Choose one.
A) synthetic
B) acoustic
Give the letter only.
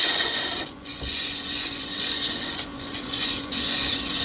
A